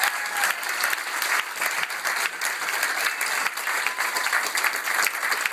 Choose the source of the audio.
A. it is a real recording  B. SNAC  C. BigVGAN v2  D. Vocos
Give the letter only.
A